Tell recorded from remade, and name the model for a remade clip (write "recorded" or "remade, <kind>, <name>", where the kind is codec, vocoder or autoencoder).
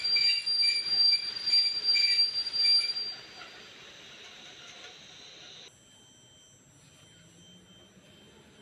recorded